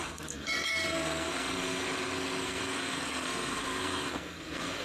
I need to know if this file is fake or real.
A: fake